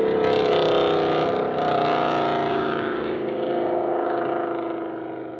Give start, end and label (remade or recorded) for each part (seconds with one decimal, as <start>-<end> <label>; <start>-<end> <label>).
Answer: 0.0-2.5 recorded; 2.5-4.3 remade; 4.3-5.4 recorded

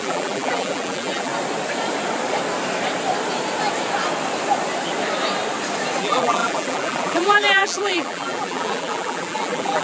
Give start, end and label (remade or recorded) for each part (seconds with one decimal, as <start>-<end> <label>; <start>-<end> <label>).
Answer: 0.0-1.3 remade; 1.3-6.0 recorded; 6.0-9.8 remade